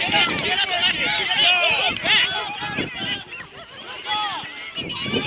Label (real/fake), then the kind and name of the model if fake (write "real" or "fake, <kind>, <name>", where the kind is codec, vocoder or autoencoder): real